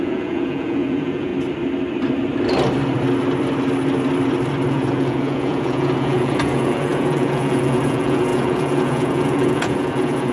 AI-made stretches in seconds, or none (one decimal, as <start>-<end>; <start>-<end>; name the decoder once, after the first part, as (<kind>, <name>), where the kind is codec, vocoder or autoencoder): 0.0-1.3 (vocoder, Vocos); 4.7-10.3